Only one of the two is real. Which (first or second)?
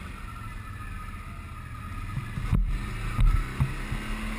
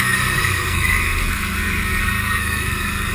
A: first